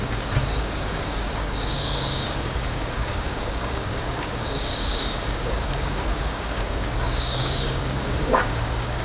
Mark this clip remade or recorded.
remade